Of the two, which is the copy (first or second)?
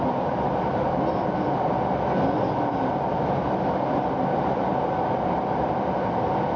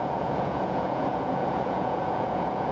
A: second